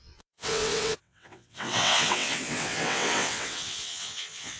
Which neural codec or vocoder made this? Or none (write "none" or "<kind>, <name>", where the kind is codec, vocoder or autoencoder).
vocoder, WaveNeXt